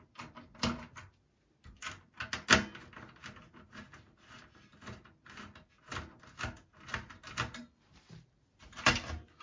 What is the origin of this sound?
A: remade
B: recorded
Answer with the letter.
B